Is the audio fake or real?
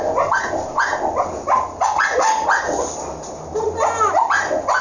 real